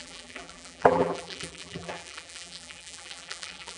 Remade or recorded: remade